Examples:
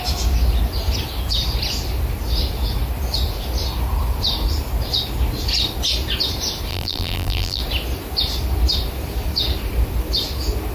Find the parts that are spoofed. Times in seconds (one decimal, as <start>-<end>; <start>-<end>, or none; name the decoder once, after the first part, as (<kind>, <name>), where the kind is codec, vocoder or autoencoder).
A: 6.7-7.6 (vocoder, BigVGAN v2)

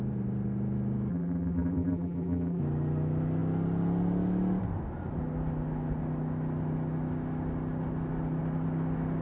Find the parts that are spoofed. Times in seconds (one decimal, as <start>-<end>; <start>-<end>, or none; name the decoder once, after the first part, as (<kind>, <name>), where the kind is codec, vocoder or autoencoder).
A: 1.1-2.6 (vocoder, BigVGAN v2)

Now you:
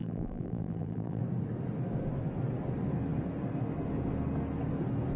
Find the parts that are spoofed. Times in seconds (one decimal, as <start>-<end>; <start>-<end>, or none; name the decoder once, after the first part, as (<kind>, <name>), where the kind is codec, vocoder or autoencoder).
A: 0.0-1.2 (vocoder, BigVGAN v2)

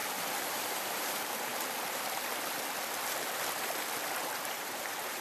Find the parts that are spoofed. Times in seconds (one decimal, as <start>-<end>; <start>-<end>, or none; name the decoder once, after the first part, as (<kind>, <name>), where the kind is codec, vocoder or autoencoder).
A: 0.6-1.5 (vocoder, BigVGAN v2); 4.4-5.2

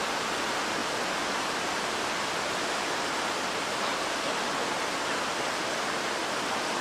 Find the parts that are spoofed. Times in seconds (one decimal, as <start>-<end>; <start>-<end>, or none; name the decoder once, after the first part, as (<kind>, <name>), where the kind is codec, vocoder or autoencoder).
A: 0.8-3.8 (vocoder, BigVGAN v2)